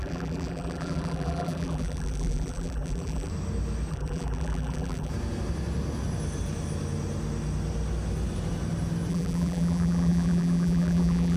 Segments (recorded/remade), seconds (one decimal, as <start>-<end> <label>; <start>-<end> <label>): 0.0-3.3 remade; 3.3-3.9 recorded; 3.9-5.1 remade; 5.1-9.1 recorded; 9.1-11.4 remade